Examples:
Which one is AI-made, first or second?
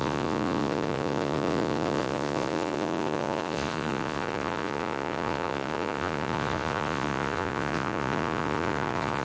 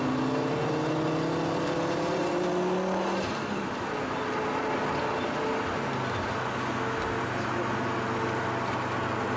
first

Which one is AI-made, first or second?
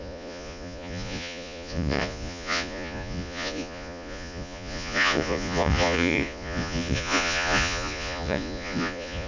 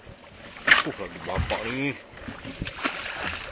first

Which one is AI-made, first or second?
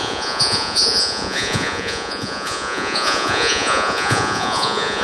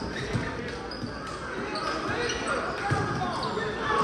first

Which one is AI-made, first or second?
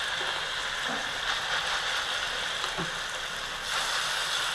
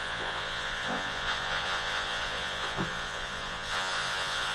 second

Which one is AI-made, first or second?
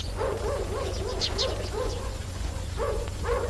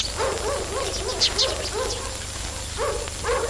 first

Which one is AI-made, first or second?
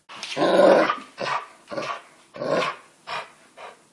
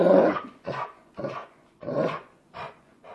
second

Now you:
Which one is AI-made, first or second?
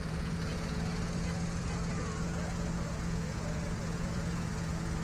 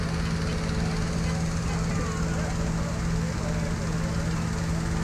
first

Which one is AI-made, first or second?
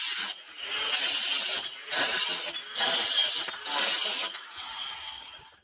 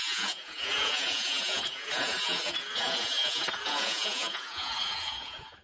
second